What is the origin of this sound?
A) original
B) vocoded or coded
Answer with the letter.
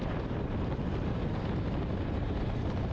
A